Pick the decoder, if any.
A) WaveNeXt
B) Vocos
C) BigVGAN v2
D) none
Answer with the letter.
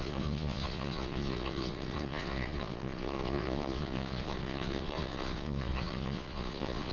B